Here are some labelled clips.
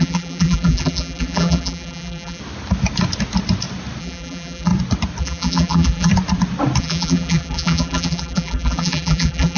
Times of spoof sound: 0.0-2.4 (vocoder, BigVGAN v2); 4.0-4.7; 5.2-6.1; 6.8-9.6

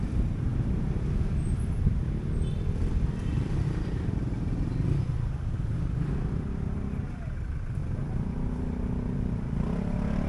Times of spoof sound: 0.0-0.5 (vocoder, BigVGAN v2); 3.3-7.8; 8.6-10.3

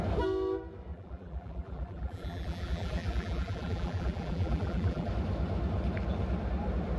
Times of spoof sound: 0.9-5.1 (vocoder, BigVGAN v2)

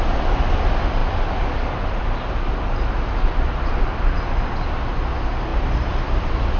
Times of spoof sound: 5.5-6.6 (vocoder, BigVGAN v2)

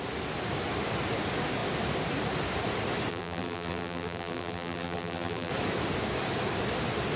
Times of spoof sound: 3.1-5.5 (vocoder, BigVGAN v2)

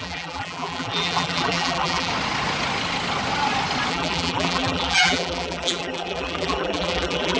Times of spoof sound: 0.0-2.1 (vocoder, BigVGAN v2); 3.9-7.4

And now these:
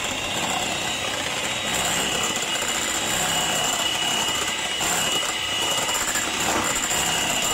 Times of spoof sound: 1.7-5.8 (vocoder, BigVGAN v2)